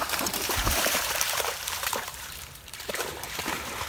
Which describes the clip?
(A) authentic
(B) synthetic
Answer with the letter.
B